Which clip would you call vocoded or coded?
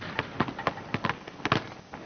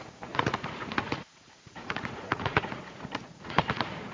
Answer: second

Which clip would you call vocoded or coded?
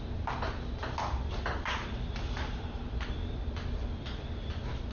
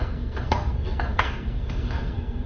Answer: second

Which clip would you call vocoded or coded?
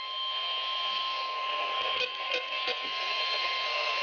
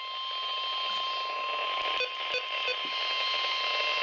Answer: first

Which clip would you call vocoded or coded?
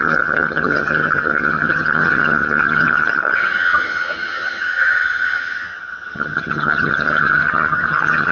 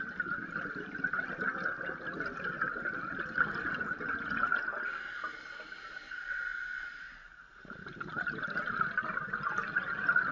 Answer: first